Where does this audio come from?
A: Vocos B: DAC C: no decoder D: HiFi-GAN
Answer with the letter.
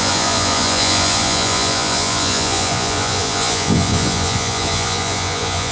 A